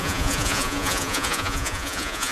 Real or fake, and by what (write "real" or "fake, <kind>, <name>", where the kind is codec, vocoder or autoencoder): fake, vocoder, Vocos